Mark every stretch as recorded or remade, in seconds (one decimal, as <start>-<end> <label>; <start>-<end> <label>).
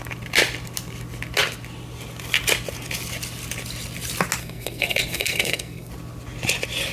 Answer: 0.0-4.4 recorded; 4.4-5.9 remade; 5.9-6.9 recorded